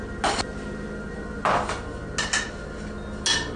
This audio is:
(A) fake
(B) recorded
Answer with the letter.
B